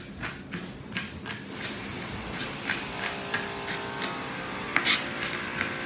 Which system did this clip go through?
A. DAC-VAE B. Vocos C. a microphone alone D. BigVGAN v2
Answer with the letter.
C